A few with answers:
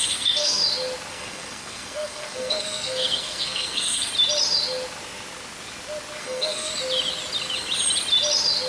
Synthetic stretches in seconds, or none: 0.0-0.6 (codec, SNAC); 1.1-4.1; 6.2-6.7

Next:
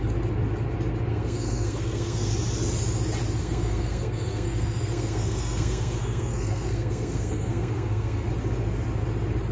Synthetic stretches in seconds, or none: 1.1-2.3 (codec, SNAC); 3.4-8.3

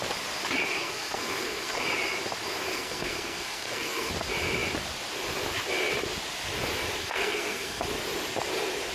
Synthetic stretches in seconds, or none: 0.8-1.8 (codec, SNAC); 2.7-4.1; 7.0-7.8

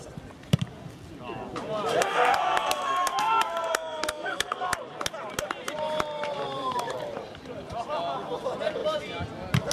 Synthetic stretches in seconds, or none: 2.0-4.6 (codec, SNAC)

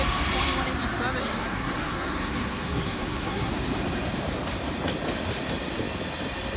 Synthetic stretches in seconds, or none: 1.2-3.5 (codec, SNAC)

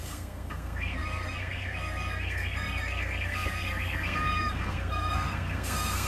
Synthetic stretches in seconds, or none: 0.0-6.1 (codec, SNAC)

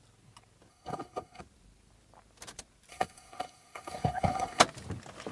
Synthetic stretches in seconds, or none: 0.7-1.4 (codec, SNAC); 2.9-4.6

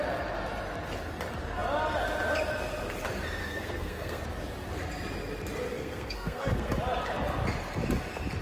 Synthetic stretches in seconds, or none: 3.4-4.2 (codec, SNAC); 5.7-6.7